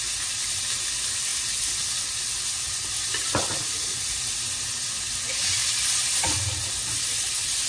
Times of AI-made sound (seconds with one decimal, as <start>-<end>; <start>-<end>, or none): none